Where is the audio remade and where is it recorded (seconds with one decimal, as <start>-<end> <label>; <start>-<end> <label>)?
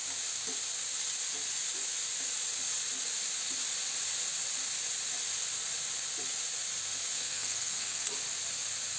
0.0-7.1 recorded; 7.1-8.1 remade; 8.1-9.0 recorded